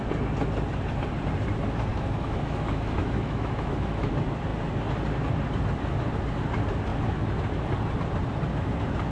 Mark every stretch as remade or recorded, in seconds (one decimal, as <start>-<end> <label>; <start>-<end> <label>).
0.0-1.9 recorded; 1.9-4.1 remade; 4.1-9.1 recorded